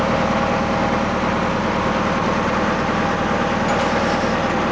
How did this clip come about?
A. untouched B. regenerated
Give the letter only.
A